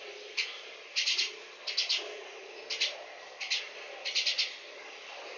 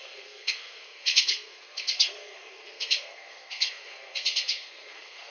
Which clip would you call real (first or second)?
first